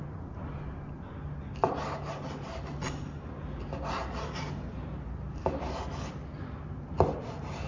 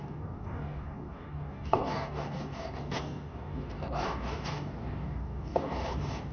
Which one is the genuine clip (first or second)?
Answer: first